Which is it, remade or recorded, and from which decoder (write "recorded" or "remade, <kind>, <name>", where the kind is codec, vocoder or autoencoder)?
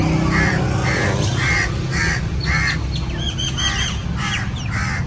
recorded